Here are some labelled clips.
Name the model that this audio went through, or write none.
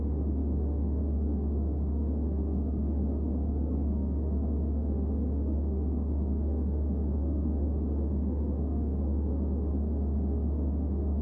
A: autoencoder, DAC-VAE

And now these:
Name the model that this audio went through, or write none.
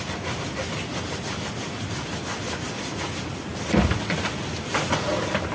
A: none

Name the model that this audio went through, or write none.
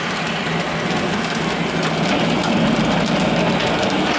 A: none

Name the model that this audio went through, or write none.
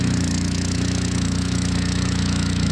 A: autoencoder, DAC-VAE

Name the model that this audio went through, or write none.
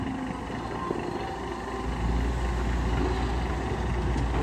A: none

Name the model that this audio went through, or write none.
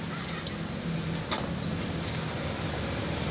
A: none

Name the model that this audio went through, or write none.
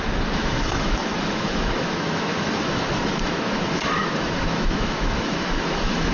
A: autoencoder, DAC-VAE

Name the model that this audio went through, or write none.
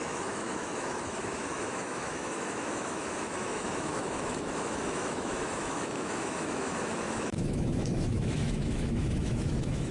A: autoencoder, DAC-VAE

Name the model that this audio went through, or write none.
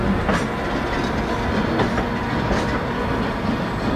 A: none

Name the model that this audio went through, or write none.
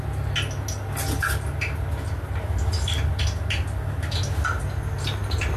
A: none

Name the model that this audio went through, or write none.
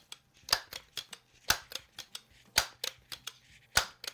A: none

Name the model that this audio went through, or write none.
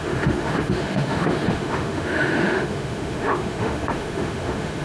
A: autoencoder, DAC-VAE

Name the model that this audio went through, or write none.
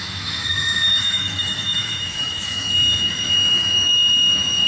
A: autoencoder, DAC-VAE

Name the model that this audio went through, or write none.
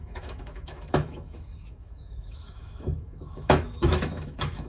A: autoencoder, DAC-VAE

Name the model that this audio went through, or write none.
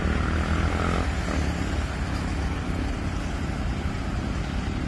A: none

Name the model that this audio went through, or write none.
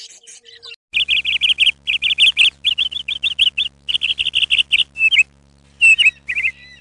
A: none